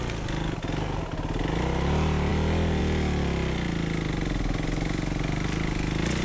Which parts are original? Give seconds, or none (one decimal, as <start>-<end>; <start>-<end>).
0.0-6.2